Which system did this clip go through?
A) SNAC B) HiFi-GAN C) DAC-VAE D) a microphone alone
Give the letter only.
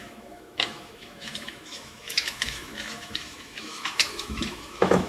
C